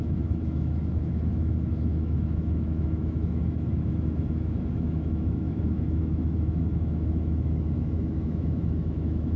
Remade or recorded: remade